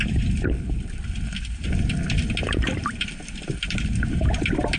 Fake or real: real